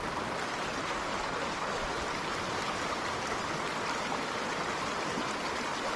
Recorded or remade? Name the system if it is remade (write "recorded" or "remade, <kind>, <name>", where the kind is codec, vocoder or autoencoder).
recorded